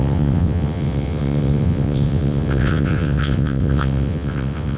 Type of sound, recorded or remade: remade